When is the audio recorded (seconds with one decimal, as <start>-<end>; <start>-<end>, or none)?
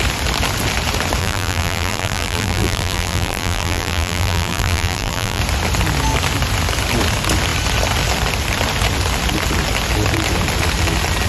0.0-1.2; 5.4-11.3